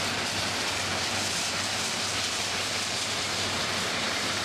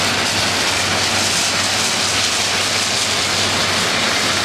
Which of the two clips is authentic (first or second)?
second